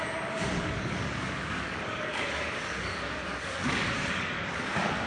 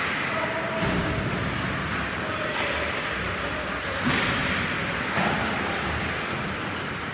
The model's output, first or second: first